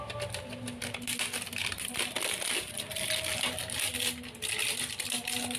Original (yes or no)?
yes